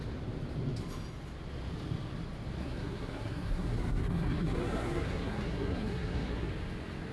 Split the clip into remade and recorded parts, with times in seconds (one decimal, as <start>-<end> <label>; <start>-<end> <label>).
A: 0.0-2.6 recorded; 2.6-6.5 remade; 6.5-7.1 recorded